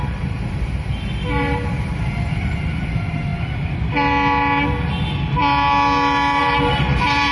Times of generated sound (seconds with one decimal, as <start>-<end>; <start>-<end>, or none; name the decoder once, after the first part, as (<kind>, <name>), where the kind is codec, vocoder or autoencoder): 0.0-3.3 (vocoder, BigVGAN v2); 6.4-7.3